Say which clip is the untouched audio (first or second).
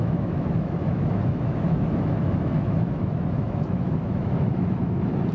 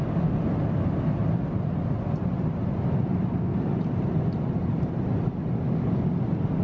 second